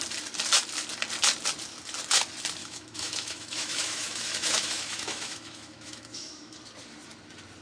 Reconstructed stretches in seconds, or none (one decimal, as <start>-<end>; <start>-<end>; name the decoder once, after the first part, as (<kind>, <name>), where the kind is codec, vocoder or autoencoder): 2.6-6.6 (autoencoder, DAC-VAE)

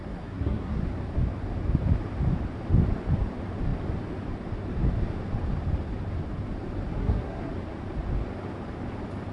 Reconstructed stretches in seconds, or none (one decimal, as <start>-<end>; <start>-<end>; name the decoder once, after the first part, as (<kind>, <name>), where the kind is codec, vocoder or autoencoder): 0.0-0.8 (codec, SNAC); 7.0-7.5